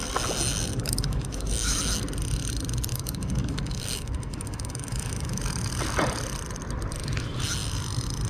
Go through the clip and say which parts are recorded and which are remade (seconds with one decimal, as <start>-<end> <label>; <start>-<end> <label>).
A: 0.0-0.7 recorded; 0.7-1.8 remade; 1.8-2.9 recorded; 2.9-5.4 remade; 5.4-8.3 recorded